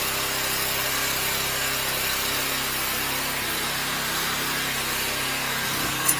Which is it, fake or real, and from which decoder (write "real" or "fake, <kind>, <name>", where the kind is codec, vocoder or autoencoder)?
real